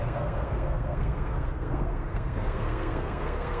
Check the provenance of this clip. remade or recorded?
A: remade